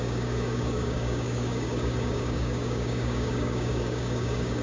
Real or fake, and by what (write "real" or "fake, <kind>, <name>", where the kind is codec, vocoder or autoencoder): fake, codec, DAC